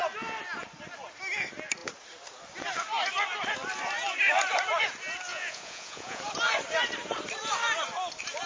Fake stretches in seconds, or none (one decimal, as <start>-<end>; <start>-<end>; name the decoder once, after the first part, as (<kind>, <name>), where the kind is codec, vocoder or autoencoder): 5.3-6.2 (vocoder, Vocos)